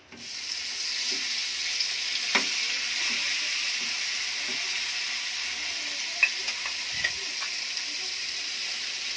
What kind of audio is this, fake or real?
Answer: real